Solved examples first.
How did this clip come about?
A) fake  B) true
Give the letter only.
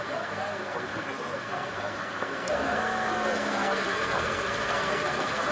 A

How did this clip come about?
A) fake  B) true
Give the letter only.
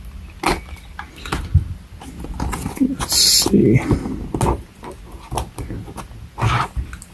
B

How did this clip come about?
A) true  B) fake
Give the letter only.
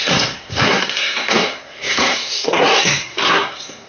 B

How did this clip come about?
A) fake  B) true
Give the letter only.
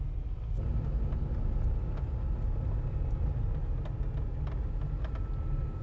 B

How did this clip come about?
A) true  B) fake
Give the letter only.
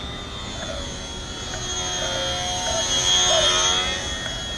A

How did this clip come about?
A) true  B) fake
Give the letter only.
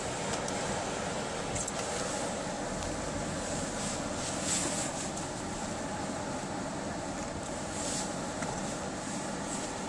A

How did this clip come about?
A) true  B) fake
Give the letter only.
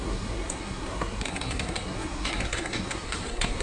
B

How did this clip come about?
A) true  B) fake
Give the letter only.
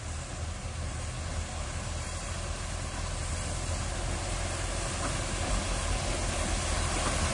A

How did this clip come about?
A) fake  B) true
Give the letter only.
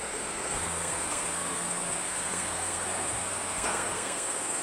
A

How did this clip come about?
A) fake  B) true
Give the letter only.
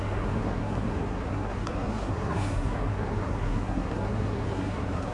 A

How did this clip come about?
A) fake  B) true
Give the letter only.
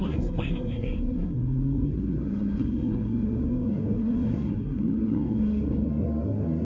A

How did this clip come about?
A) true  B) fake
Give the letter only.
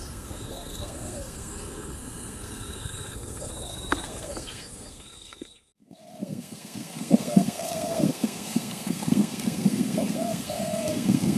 B